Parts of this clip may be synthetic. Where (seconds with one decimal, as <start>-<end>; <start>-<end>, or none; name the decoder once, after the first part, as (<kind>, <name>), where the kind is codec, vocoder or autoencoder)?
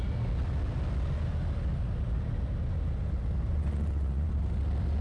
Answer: 3.5-4.3 (vocoder, Vocos)